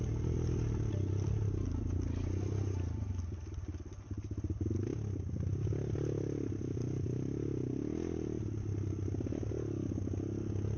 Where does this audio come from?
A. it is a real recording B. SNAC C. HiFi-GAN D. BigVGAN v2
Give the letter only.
A